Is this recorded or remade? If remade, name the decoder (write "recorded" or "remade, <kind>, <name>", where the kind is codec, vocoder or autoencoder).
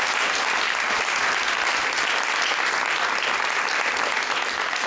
recorded